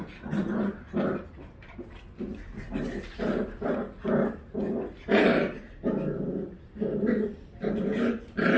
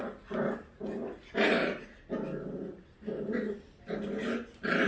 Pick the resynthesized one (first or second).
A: first